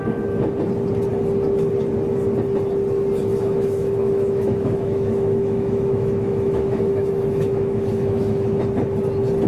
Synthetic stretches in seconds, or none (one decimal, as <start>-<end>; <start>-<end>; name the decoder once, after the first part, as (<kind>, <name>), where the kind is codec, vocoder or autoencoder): 3.3-8.6 (autoencoder, DAC-VAE)